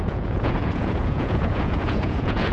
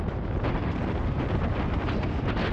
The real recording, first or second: second